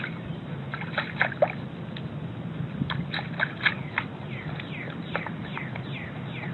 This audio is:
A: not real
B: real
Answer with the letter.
B